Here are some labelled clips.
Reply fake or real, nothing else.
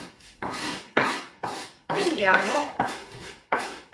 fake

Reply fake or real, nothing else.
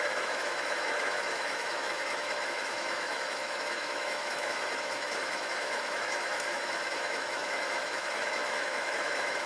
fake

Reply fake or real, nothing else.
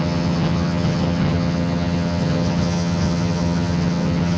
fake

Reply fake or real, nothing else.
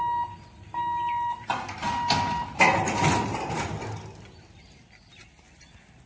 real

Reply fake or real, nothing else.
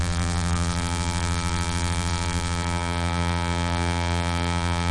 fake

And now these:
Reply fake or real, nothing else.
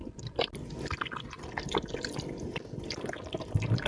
real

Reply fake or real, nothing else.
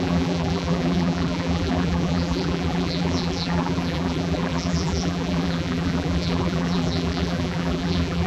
fake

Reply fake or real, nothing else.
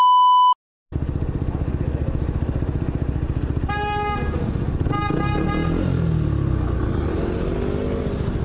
real